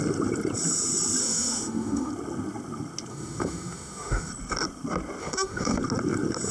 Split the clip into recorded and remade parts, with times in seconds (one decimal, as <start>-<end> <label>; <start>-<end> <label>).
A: 0.0-1.2 recorded; 1.2-2.1 remade; 2.1-3.1 recorded; 3.1-4.3 remade; 4.3-5.2 recorded; 5.2-5.8 remade; 5.8-6.5 recorded